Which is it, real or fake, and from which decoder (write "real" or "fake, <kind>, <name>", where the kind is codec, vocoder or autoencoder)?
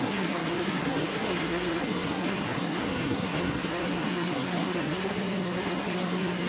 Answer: fake, codec, SNAC